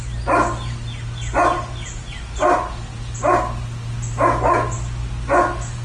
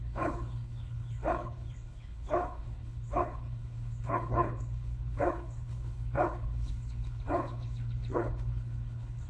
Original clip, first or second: first